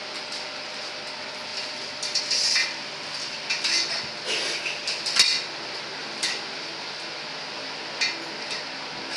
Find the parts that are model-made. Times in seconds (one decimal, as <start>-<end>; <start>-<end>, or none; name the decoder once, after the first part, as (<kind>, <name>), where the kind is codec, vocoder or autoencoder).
6.0-7.0 (vocoder, BigVGAN v2)